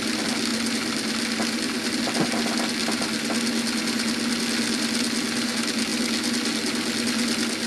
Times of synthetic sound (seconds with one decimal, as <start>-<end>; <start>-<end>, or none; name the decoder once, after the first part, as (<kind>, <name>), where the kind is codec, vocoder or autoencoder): none